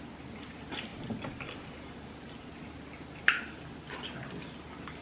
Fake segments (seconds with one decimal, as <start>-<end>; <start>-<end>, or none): none